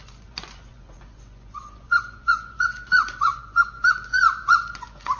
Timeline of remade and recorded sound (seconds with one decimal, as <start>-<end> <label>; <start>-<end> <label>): 0.0-5.2 remade